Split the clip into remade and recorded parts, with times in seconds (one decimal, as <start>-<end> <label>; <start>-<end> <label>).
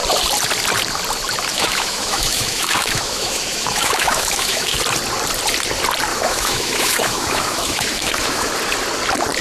0.0-1.5 recorded; 1.5-4.8 remade; 4.8-6.1 recorded; 6.1-8.5 remade; 8.5-9.4 recorded